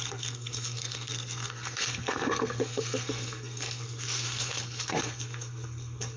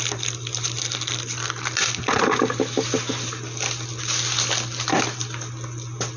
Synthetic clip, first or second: first